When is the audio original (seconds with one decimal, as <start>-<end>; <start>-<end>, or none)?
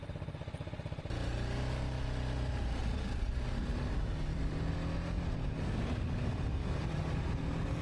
0.0-2.8; 4.7-7.8